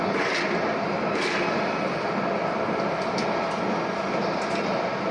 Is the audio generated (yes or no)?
no